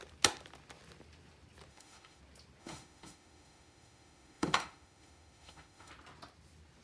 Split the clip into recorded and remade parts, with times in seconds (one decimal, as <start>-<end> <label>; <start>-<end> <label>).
0.0-1.7 recorded; 1.7-2.2 remade; 2.2-2.6 recorded; 2.6-5.9 remade; 5.9-6.8 recorded